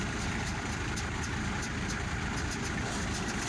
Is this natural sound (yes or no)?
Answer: yes